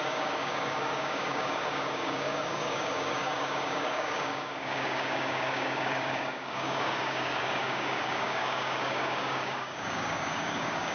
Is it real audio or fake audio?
fake